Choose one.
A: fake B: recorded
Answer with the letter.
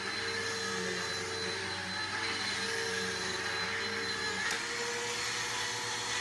B